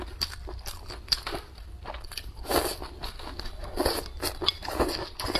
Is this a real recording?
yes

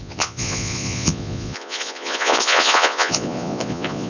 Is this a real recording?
no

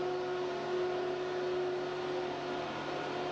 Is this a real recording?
yes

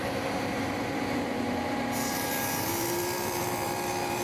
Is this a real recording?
no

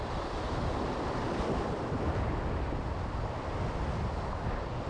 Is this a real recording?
yes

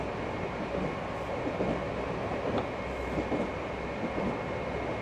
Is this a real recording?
no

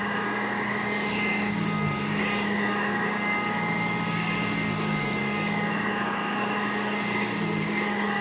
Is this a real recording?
no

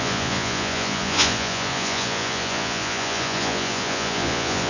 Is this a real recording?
no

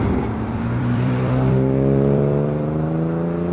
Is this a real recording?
no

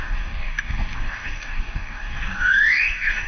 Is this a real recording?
no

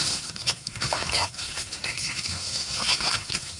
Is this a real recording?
no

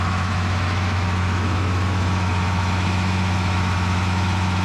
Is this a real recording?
no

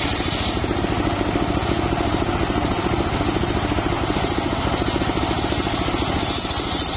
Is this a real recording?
yes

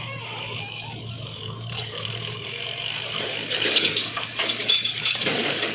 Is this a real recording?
no